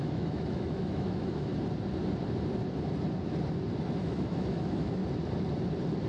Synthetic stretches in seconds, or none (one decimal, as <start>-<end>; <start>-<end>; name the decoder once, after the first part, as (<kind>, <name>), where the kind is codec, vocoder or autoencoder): 0.0-1.5 (autoencoder, DAC-VAE); 4.0-5.0